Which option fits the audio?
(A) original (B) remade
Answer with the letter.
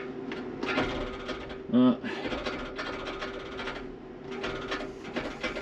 A